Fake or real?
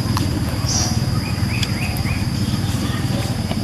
fake